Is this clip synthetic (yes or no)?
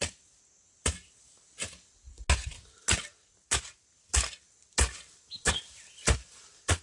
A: no